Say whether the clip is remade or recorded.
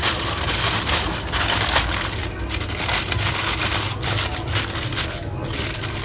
recorded